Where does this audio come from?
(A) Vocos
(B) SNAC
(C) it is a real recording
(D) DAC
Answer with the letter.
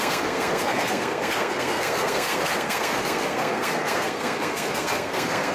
B